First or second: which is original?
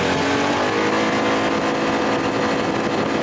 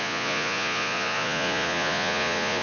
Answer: first